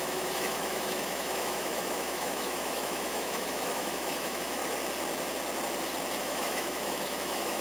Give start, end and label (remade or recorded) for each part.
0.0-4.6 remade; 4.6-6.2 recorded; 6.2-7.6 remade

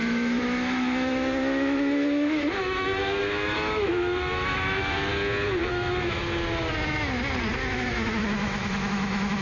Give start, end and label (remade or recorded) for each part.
0.0-5.1 remade; 5.1-5.7 recorded; 5.7-6.2 remade; 6.2-7.7 recorded; 7.7-9.4 remade

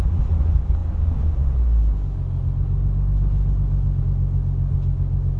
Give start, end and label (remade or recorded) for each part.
0.0-5.4 recorded

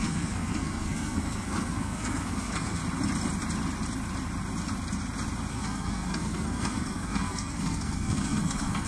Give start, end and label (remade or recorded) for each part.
0.0-2.8 remade; 2.8-5.5 recorded; 5.5-8.9 remade